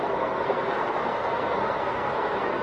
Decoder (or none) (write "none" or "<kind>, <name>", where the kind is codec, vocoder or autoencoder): codec, SNAC